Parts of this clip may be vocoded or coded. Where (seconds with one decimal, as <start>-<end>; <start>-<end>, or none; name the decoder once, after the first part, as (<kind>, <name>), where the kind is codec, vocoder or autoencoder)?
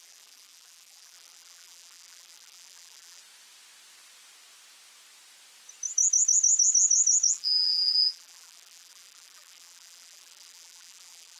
0.0-3.2 (vocoder, BigVGAN v2); 7.3-11.4